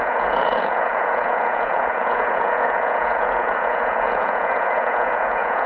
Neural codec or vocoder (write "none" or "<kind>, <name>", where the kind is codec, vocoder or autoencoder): vocoder, Vocos